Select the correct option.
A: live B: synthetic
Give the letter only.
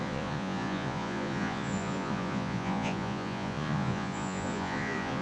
B